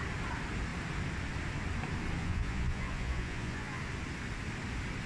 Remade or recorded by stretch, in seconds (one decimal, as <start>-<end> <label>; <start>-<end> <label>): 0.0-2.2 recorded; 2.2-3.8 remade; 3.8-5.1 recorded